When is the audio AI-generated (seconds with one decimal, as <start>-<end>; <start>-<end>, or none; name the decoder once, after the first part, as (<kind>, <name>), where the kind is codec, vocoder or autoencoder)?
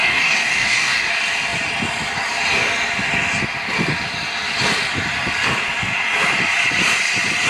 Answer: 0.0-1.1 (codec, DAC)